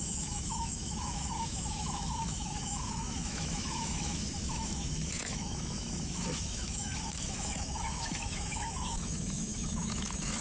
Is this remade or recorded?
remade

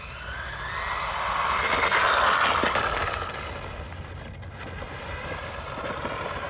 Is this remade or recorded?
recorded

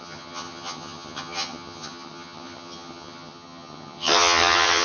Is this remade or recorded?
remade